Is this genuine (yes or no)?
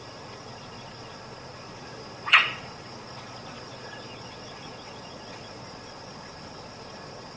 no